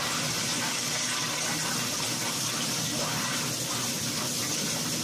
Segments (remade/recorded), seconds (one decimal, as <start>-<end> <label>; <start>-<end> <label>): 0.0-5.0 recorded